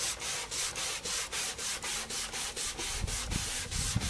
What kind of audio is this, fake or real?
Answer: real